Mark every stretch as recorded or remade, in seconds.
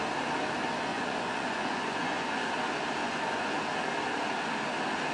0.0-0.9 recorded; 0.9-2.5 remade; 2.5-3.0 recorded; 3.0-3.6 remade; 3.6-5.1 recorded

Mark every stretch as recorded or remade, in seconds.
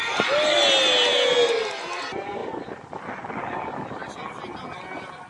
0.0-5.3 recorded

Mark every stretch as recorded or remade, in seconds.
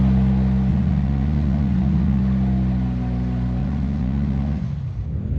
0.0-0.7 recorded; 0.7-2.2 remade; 2.2-3.6 recorded; 3.6-4.8 remade; 4.8-5.4 recorded